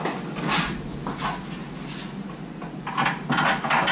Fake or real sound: real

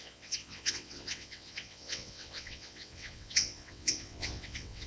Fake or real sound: fake